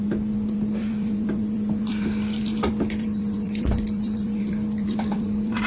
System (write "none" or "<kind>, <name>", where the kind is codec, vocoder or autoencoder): vocoder, BigVGAN v2